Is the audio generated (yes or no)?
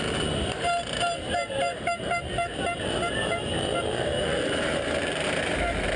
yes